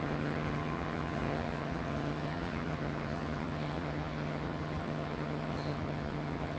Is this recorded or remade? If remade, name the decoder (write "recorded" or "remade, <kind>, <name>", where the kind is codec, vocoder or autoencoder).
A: remade, vocoder, HiFi-GAN